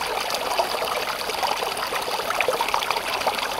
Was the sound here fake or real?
real